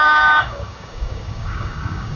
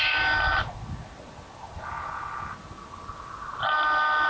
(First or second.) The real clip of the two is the second